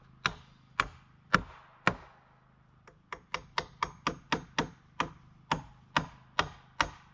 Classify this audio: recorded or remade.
recorded